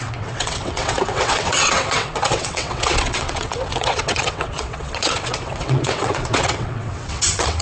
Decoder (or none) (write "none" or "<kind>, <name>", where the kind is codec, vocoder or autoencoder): vocoder, WaveNeXt